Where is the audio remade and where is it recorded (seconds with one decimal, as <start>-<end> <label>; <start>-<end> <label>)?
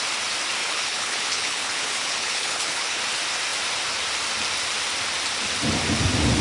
0.0-0.6 recorded; 0.6-3.0 remade; 3.0-6.4 recorded